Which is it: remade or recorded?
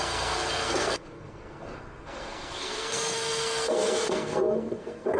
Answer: remade